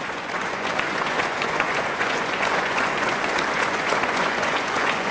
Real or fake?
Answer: fake